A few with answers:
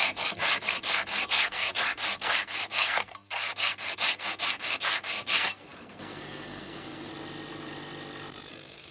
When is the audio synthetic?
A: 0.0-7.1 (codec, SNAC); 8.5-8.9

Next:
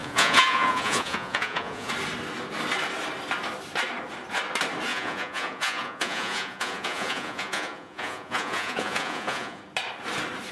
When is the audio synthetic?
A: 0.0-1.9 (vocoder, Vocos); 4.9-9.6